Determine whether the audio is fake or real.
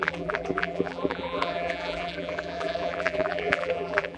fake